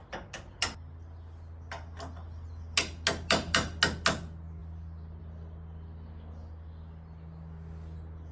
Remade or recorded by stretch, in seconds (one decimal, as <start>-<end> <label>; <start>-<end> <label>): 0.0-8.3 recorded